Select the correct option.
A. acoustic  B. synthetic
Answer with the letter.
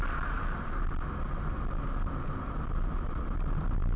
A